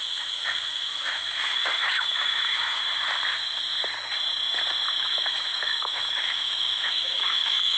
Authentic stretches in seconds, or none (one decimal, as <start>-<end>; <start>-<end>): 2.8-5.0